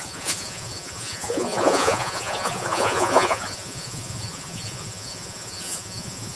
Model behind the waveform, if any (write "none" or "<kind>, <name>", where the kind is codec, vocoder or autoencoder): vocoder, Vocos